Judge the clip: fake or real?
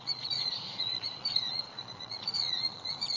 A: fake